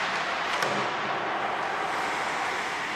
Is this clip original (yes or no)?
yes